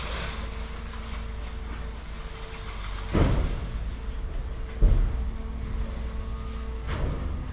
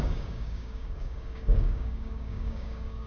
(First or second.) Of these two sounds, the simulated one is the second